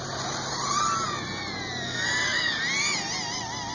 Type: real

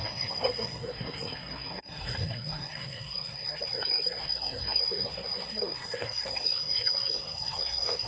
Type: fake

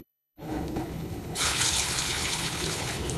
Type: fake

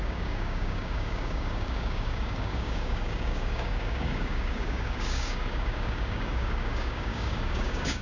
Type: fake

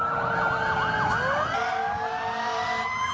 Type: real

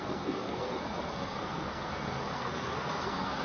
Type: fake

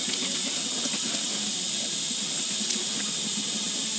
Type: real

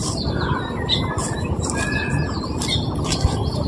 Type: real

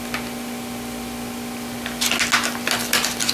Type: real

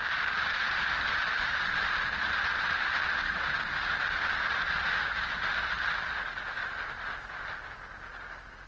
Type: real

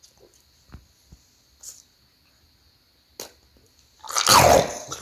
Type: real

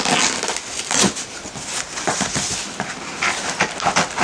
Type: real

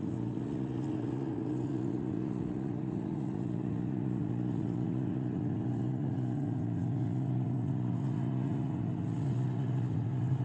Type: fake